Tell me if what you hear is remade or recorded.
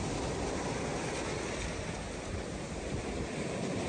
recorded